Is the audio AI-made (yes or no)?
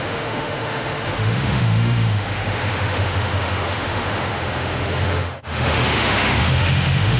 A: yes